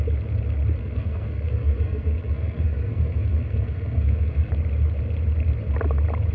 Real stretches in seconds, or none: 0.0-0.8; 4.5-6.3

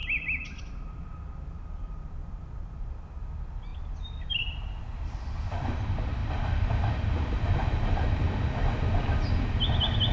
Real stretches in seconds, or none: 0.0-2.2; 2.9-3.7; 4.4-6.2; 8.3-10.1